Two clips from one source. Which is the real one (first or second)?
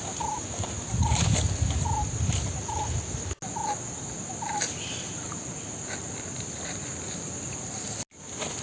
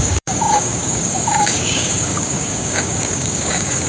first